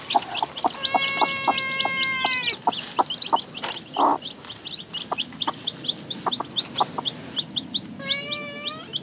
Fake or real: real